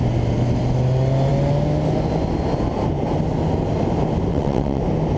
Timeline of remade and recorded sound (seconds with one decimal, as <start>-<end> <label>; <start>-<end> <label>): 0.0-4.3 recorded; 4.3-4.8 remade; 4.8-5.2 recorded